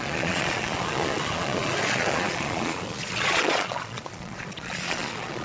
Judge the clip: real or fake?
fake